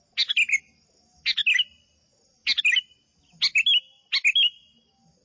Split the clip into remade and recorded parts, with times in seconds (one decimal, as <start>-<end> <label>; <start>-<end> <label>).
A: 0.0-5.2 recorded